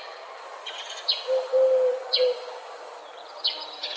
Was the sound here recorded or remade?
recorded